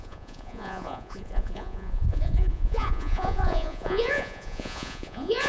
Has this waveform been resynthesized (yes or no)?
yes